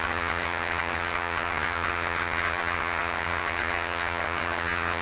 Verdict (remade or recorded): remade